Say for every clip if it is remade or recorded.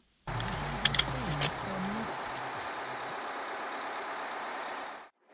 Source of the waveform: recorded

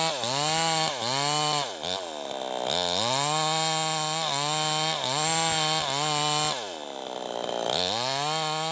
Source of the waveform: recorded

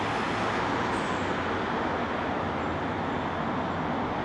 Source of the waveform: recorded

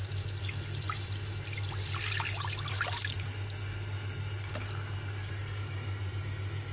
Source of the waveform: recorded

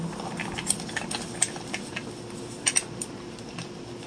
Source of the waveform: recorded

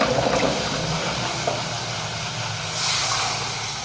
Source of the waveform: recorded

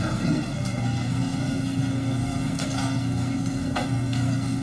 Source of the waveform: remade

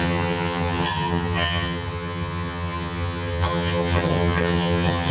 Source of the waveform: remade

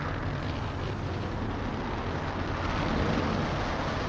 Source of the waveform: recorded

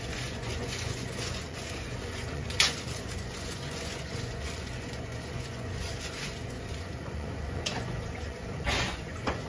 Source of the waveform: remade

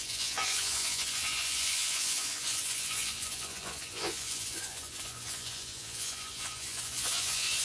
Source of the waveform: remade